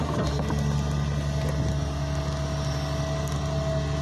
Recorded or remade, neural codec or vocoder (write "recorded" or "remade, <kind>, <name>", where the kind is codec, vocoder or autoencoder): recorded